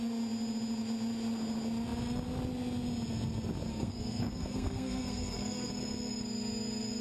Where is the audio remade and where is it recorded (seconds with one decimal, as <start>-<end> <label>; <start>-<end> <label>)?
0.0-3.7 recorded; 3.7-5.7 remade; 5.7-7.0 recorded